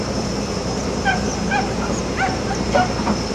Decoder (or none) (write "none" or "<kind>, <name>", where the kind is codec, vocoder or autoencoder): vocoder, BigVGAN v2